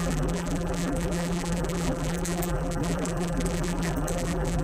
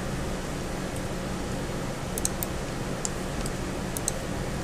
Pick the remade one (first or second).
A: first